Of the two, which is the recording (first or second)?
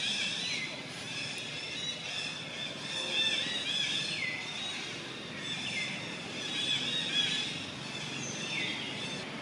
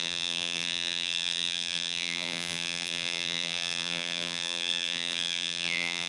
first